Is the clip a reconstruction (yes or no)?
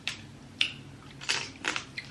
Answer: yes